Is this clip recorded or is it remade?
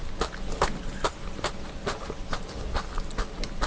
recorded